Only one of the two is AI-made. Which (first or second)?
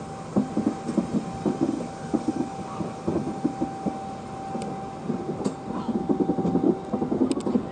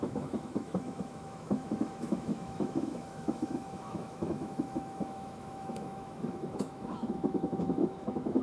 second